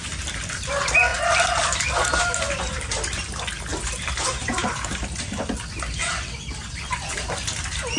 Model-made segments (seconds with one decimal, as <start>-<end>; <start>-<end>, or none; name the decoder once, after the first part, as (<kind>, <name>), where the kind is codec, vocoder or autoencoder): 0.0-0.5 (vocoder, BigVGAN v2); 3.7-5.3

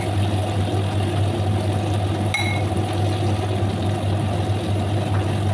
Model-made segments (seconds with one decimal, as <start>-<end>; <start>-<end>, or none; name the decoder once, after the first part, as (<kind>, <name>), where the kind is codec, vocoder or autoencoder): none